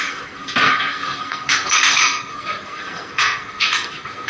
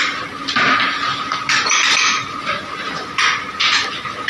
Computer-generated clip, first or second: first